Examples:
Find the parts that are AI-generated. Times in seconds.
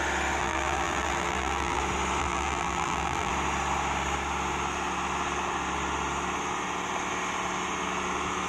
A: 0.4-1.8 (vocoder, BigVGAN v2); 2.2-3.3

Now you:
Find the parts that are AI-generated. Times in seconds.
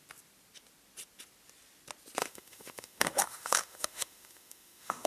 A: 2.2-5.1 (autoencoder, DAC-VAE)